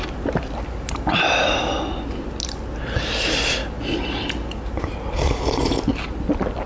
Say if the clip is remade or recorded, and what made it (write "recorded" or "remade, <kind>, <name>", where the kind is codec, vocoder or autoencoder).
recorded